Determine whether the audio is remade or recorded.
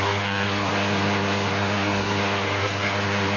remade